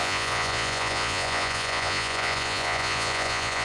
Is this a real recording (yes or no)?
no